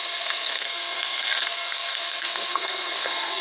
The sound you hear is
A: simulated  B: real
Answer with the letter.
A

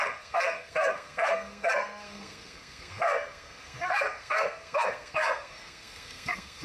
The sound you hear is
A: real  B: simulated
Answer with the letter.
B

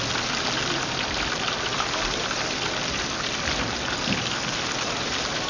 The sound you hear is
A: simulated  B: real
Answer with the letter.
B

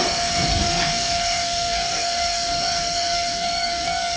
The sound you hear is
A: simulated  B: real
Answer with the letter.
A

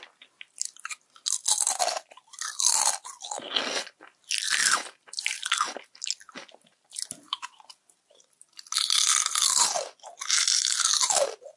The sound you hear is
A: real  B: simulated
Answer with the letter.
A